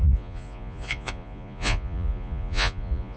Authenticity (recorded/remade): remade